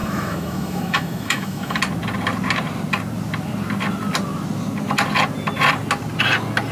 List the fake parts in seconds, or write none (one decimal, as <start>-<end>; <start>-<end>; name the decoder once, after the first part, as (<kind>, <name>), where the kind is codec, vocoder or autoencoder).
0.0-1.8 (autoencoder, DAC-VAE)